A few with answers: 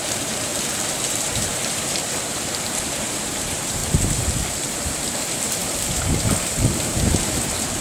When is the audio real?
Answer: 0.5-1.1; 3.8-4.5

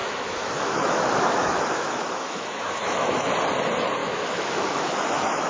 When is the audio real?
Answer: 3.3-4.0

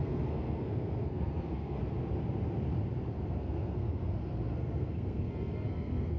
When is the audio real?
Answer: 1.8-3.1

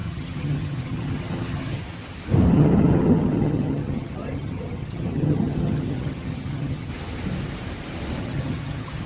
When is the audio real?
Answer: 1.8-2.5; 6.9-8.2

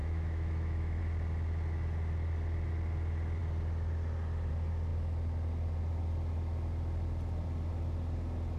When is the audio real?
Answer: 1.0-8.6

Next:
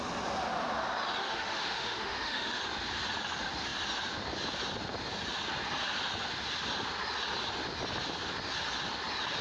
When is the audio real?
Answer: 0.0-1.2; 2.6-9.4

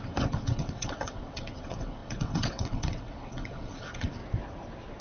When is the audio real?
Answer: 4.2-5.0

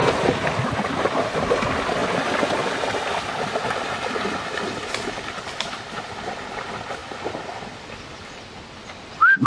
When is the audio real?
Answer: 0.0-9.5